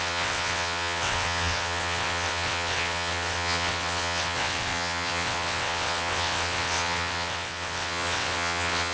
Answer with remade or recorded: remade